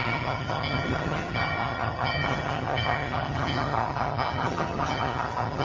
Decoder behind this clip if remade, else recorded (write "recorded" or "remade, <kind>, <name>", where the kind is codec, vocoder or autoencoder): remade, vocoder, HiFi-GAN